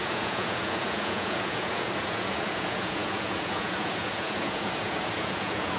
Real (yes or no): no